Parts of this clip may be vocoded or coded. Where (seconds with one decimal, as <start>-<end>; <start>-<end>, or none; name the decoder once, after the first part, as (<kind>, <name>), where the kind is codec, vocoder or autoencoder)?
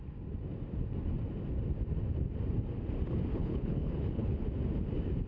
3.3-4.4 (codec, HILCodec)